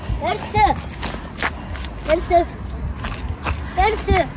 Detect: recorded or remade recorded